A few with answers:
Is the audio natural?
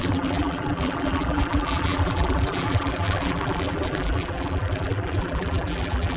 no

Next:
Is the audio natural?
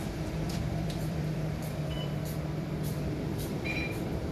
no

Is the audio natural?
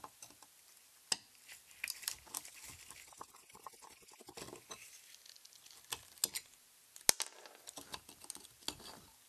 yes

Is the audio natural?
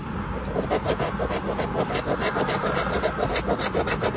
yes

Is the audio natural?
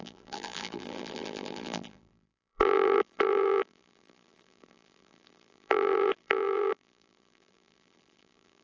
no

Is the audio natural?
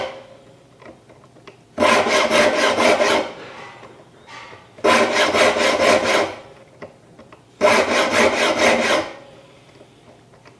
no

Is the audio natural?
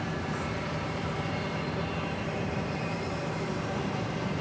no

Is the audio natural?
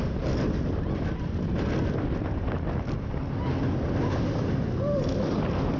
yes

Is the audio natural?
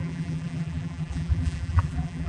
no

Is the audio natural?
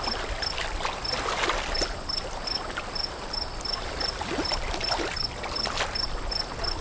yes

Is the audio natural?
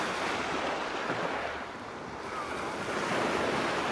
yes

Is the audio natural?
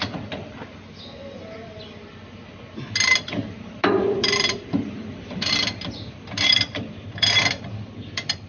no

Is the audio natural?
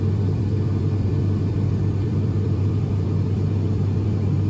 no